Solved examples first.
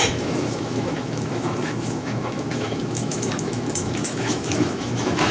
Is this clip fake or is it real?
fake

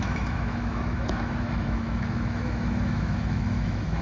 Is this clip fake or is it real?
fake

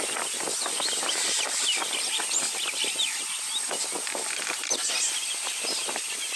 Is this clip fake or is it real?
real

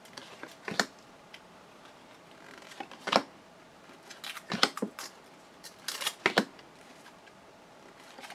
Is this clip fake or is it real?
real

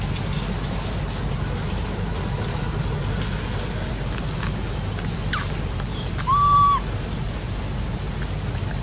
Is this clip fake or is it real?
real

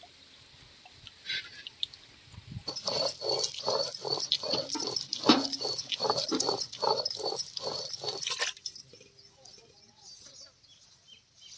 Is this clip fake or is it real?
real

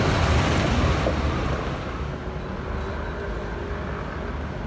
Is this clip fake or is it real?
real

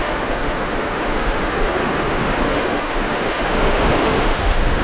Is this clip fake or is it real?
fake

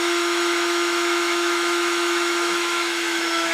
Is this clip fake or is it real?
fake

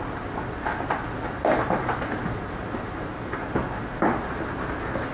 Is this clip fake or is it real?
real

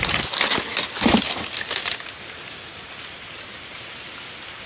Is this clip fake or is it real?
real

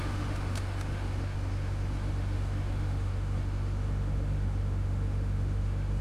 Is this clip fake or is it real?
fake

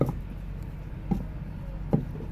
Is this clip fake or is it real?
real